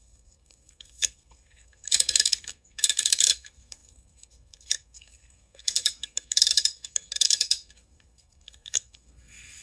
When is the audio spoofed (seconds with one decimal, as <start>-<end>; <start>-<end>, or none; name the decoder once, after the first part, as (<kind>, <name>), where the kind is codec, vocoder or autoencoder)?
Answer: 0.0-9.6 (codec, SNAC)